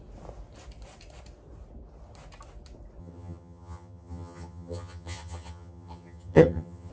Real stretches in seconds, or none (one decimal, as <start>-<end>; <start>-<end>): 0.0-3.0